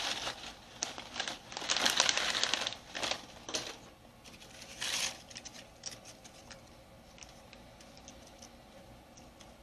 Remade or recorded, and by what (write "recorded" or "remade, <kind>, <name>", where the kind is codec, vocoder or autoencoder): recorded